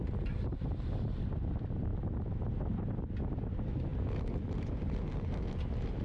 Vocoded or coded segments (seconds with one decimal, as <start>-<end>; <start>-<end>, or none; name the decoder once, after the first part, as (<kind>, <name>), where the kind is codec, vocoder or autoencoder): none